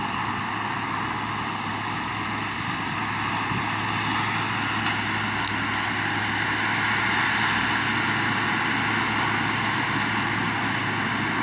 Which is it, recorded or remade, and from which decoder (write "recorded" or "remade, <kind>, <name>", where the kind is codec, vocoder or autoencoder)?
recorded